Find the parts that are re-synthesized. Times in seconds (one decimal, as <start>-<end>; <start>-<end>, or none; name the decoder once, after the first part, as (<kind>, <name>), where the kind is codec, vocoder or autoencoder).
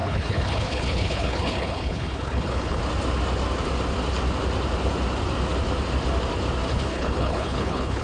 0.0-2.8 (codec, HILCodec); 6.7-8.0